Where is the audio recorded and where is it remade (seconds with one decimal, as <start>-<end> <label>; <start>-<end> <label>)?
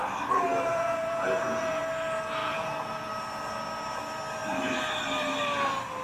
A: 0.0-0.7 recorded; 0.7-1.8 remade; 1.8-2.4 recorded; 2.4-3.1 remade; 3.1-6.0 recorded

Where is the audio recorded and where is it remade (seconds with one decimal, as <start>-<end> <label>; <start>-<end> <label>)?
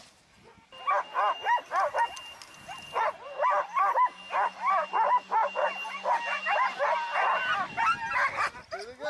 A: 0.0-9.1 recorded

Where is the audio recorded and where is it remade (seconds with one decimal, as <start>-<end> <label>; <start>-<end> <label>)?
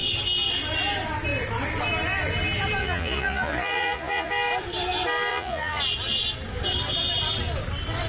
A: 0.0-2.8 recorded; 2.8-4.3 remade; 4.3-5.3 recorded; 5.3-5.8 remade; 5.8-8.1 recorded